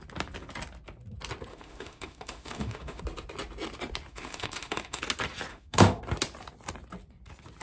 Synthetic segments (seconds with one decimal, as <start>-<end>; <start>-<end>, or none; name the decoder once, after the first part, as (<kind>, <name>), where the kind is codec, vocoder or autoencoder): 1.5-3.0 (autoencoder, DAC-VAE); 4.1-5.0; 5.5-6.0

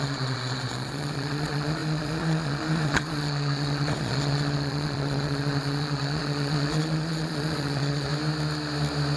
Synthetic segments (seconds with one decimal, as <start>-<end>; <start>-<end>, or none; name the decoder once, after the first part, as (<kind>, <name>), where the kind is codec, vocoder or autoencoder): 0.0-8.1 (vocoder, Vocos)

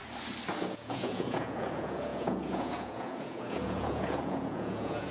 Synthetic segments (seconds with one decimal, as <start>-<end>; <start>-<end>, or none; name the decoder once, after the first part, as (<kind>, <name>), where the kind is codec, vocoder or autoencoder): 0.7-5.1 (vocoder, Vocos)

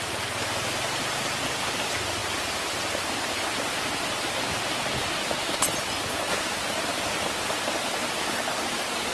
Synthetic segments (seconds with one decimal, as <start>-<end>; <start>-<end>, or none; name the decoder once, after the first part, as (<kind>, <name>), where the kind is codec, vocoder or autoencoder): none

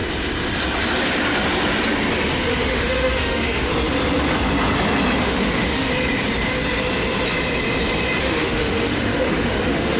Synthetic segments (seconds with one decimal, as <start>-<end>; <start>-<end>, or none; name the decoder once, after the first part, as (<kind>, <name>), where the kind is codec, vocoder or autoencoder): 2.5-3.7 (autoencoder, DAC-VAE); 5.2-5.9; 8.2-10.0

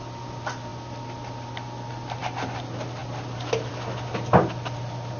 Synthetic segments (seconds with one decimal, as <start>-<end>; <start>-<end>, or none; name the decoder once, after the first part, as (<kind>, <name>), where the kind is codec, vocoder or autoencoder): none